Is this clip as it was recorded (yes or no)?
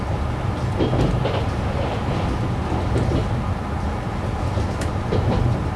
yes